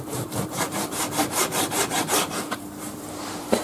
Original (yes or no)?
no